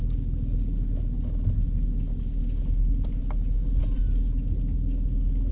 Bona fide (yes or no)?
yes